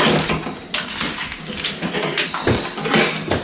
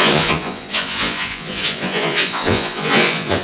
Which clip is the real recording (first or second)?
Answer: first